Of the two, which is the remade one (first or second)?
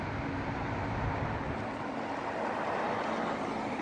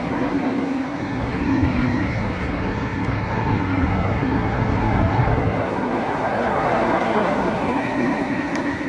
second